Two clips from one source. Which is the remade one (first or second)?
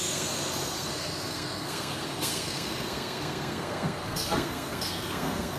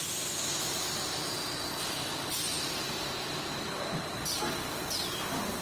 first